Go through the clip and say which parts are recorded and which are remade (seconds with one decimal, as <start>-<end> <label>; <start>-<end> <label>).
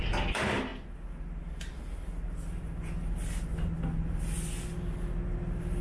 0.0-5.8 recorded